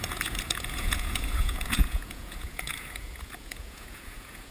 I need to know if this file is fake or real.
fake